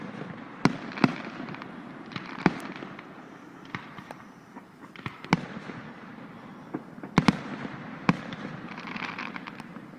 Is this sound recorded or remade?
remade